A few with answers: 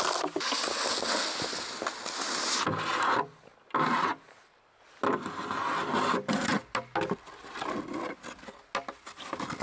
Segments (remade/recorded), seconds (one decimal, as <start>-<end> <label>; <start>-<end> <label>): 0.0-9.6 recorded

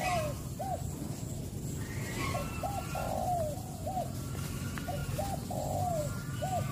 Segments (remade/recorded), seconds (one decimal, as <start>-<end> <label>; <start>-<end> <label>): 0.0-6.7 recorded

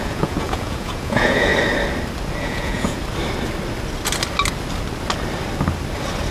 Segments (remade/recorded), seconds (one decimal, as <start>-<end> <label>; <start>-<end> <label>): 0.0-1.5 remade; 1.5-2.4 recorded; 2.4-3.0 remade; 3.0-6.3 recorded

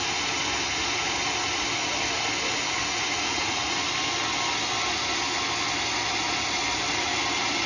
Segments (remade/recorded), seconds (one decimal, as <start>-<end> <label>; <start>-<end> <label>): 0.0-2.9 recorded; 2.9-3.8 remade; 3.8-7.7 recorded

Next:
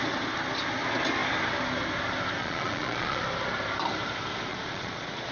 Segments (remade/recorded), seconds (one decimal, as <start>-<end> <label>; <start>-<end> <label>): 0.0-2.4 recorded; 2.4-3.2 remade; 3.2-4.5 recorded; 4.5-5.3 remade

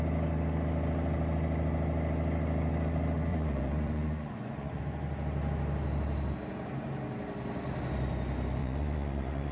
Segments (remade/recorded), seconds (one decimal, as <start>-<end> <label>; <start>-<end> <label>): 0.0-3.3 recorded; 3.3-4.8 remade; 4.8-8.6 recorded; 8.6-9.5 remade

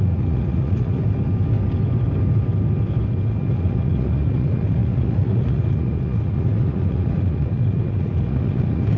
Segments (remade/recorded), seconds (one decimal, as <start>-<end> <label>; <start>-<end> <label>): 0.0-1.0 remade; 1.0-3.3 recorded; 3.3-9.0 remade